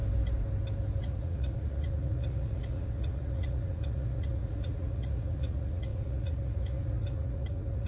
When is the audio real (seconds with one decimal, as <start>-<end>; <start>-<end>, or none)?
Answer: 0.0-1.0